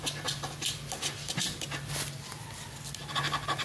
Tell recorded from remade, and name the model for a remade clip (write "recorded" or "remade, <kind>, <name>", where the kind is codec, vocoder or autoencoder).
recorded